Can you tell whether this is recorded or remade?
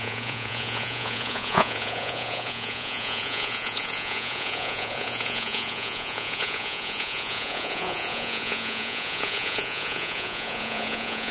remade